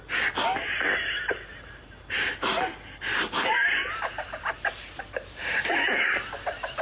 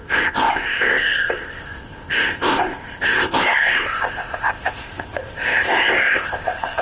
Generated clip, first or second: second